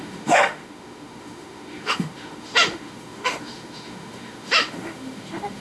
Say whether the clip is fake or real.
fake